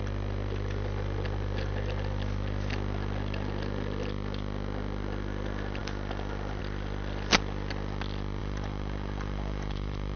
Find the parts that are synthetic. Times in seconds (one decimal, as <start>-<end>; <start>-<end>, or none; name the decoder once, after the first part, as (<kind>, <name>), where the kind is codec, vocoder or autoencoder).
8.4-10.2 (vocoder, BigVGAN v2)